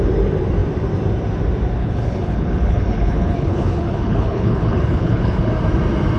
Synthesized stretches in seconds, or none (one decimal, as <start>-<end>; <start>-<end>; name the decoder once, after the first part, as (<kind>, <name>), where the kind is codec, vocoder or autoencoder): 1.8-5.5 (codec, HILCodec)